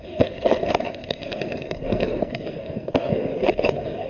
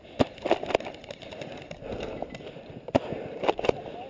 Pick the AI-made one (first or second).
first